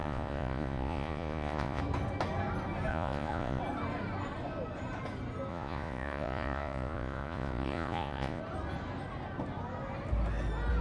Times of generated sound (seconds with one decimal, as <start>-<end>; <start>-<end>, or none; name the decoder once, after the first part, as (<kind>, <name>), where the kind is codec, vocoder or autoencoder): 0.0-1.8 (vocoder, Vocos); 2.9-3.6; 5.5-8.4